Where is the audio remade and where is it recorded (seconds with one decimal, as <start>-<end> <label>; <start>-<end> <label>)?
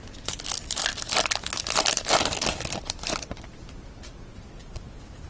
0.0-0.9 recorded; 0.9-1.4 remade; 1.4-2.5 recorded; 2.5-4.3 remade; 4.3-5.3 recorded